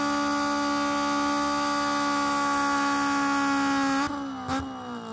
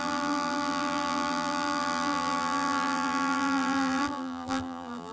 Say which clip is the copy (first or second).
second